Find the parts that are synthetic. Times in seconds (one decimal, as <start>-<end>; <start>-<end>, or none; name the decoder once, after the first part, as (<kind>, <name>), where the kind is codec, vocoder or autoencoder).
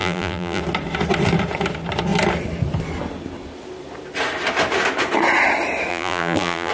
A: 0.0-0.6 (vocoder, BigVGAN v2); 5.9-6.7